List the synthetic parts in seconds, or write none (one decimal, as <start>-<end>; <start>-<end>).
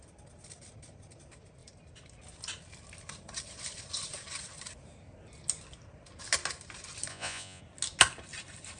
7.1-7.6